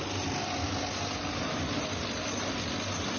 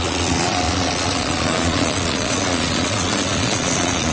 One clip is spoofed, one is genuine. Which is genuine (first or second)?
first